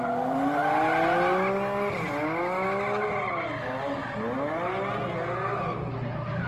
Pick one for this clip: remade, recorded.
recorded